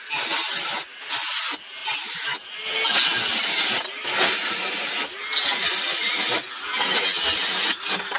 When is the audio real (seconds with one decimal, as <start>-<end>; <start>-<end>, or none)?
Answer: 0.0-8.2